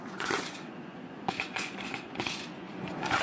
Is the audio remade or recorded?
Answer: remade